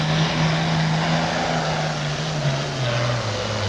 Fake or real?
real